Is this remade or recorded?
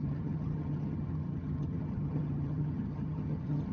remade